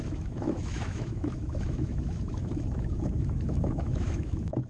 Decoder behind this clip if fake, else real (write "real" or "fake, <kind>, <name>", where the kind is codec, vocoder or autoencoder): fake, autoencoder, DAC-VAE